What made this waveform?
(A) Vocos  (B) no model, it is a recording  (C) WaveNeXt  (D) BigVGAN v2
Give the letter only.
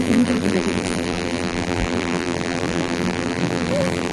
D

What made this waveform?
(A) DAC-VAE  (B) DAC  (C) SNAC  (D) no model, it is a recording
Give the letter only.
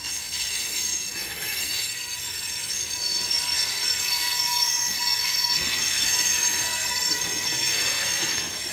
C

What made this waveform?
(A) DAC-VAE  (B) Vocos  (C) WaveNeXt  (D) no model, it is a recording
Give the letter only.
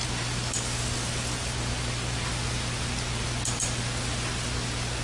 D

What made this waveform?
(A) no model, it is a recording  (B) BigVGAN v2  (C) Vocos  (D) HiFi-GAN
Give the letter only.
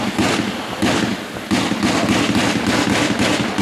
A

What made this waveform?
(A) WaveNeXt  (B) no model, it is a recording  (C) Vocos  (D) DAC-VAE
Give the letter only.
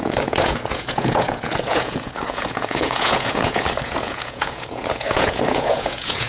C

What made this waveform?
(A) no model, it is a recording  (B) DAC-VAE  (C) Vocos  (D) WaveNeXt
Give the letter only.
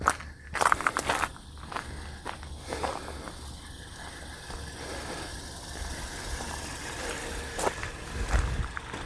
A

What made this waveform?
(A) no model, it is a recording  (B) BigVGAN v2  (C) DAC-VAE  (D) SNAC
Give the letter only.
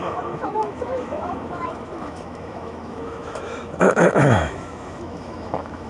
C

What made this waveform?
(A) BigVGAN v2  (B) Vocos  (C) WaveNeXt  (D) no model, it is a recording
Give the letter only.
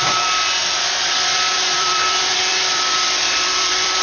A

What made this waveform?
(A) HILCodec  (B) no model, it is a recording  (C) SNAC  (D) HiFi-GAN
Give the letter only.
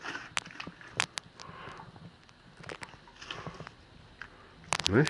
B